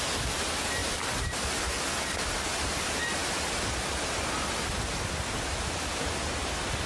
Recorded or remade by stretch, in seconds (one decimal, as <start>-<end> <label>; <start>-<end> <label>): 0.0-6.9 recorded